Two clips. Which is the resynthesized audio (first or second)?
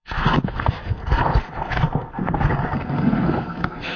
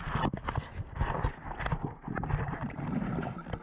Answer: first